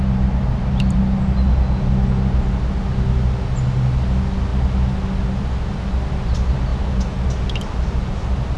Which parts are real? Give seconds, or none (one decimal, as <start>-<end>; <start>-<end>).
0.0-8.6

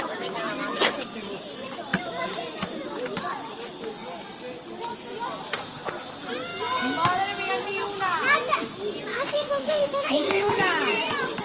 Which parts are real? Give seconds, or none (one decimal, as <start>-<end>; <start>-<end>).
0.0-9.1; 10.5-11.4

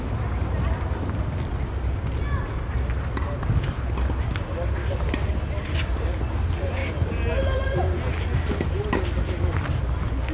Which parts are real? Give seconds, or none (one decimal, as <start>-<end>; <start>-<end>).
0.0-10.3

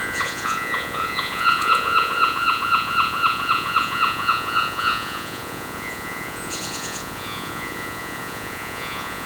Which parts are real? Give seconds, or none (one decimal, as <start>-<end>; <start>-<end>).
none

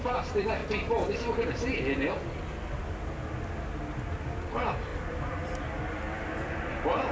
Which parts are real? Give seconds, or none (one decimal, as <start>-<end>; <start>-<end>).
0.6-4.2